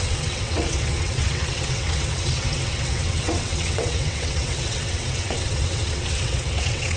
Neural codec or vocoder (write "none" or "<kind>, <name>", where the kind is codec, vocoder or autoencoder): vocoder, WaveNeXt